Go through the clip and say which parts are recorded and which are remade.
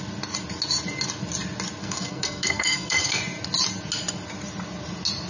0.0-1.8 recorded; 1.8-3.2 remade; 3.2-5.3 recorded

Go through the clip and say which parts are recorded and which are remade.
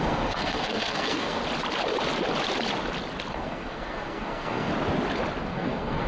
0.0-1.4 remade; 1.4-3.3 recorded; 3.3-4.7 remade; 4.7-5.4 recorded; 5.4-6.1 remade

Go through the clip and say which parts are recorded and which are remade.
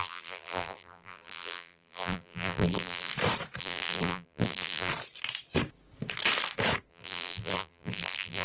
0.0-3.1 remade; 3.1-3.6 recorded; 3.6-4.9 remade; 4.9-6.9 recorded; 6.9-8.4 remade